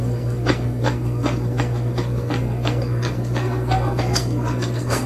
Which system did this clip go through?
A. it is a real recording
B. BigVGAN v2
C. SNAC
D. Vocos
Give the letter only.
C